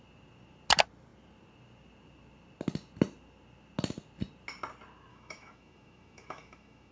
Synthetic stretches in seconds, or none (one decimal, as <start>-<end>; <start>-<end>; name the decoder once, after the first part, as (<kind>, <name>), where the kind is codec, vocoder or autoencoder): 5.1-6.9 (autoencoder, DAC-VAE)